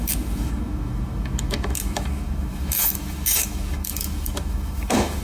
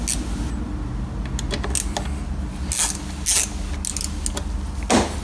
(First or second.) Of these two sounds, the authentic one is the second